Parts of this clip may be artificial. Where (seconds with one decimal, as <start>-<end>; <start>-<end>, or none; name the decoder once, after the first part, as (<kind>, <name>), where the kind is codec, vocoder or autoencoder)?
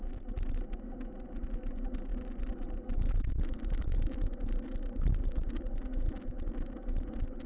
none